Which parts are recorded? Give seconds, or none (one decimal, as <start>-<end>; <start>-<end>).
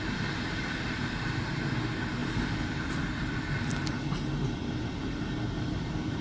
0.0-6.2